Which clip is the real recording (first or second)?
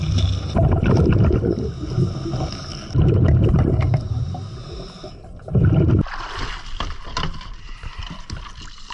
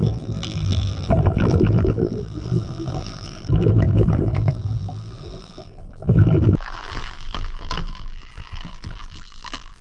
first